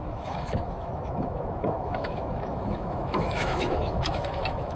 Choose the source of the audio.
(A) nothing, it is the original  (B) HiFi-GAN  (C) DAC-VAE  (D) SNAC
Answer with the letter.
C